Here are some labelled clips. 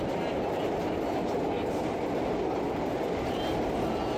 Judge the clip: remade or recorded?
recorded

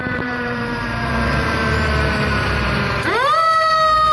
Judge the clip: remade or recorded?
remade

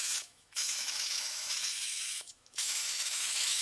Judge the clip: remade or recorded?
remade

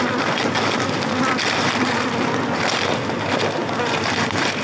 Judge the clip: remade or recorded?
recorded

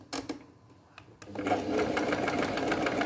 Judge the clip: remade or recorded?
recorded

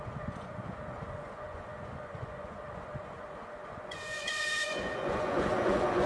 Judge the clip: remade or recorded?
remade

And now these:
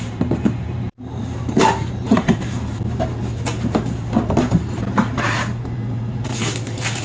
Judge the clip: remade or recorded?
remade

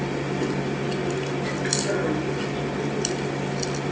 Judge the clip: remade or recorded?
recorded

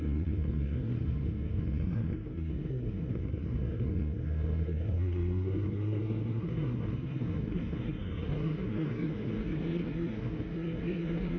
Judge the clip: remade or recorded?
remade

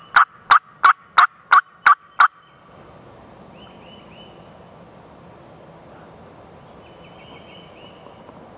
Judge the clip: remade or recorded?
recorded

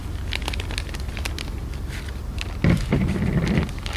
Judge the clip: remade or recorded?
recorded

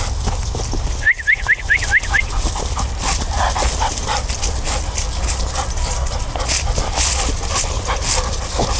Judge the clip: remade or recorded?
recorded